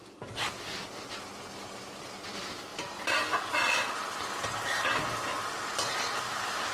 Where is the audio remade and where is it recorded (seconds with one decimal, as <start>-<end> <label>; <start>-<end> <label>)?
0.0-6.7 recorded